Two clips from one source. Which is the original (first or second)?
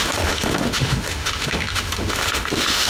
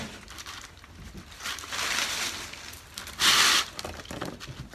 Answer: second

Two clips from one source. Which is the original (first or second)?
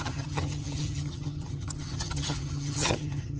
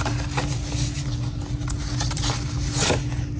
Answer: second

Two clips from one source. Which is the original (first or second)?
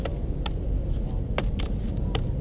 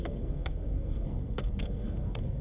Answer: first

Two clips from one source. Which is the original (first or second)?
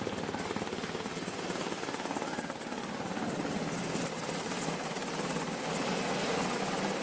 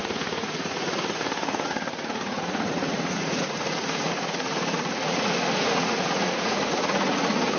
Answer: first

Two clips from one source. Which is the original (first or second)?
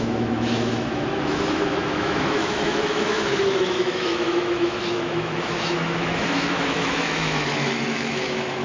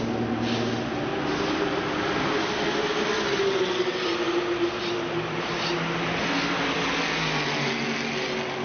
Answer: second